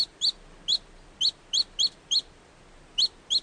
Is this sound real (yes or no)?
yes